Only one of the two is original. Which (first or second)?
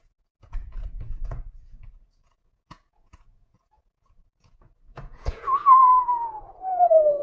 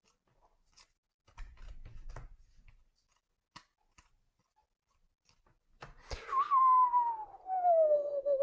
second